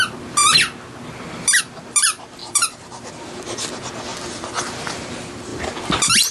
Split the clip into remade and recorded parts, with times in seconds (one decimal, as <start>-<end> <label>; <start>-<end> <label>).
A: 0.0-2.4 recorded; 2.4-3.1 remade; 3.1-6.3 recorded